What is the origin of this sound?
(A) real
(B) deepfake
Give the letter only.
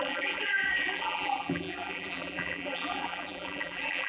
B